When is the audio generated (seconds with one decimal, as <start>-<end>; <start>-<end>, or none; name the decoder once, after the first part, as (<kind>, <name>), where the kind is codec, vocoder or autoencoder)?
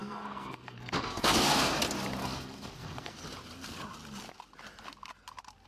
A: 0.0-1.7 (codec, SNAC); 2.2-3.2